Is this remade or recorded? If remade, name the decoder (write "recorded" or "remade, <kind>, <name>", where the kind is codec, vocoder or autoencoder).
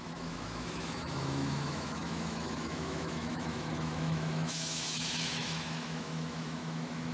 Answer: remade, autoencoder, DAC-VAE